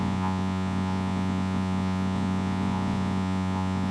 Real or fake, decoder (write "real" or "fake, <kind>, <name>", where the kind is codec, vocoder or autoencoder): fake, vocoder, Vocos